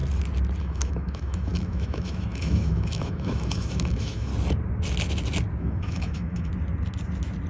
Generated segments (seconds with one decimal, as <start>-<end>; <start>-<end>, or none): 0.6-4.3; 5.6-6.5